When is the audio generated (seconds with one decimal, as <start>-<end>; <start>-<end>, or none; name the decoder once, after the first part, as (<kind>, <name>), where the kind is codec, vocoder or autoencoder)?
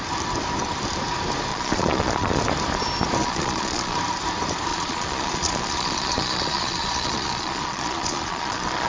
1.5-2.4 (vocoder, Vocos); 3.2-4.0; 4.7-8.9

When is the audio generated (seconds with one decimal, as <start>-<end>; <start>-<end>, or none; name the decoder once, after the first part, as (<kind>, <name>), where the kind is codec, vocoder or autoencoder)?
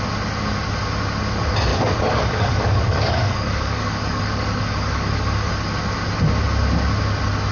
1.7-5.5 (codec, DAC)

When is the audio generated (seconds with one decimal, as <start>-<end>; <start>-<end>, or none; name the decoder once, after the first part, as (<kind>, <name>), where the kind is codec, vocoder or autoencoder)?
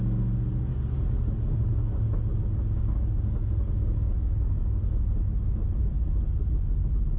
0.7-5.0 (codec, DAC)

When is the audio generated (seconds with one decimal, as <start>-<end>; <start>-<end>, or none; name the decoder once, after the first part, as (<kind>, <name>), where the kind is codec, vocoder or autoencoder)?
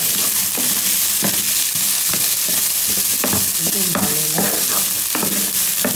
none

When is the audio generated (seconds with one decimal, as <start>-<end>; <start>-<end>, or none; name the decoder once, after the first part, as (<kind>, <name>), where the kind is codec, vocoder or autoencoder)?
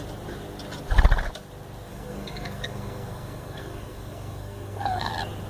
1.9-5.1 (codec, SNAC)